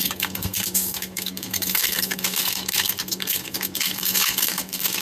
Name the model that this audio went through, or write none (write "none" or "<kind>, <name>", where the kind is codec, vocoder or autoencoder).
codec, SNAC